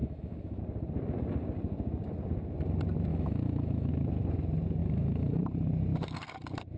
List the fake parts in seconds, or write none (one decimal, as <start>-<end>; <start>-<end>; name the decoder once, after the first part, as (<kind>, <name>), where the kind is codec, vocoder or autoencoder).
0.0-0.6 (autoencoder, DAC-VAE); 3.1-3.9; 4.8-5.4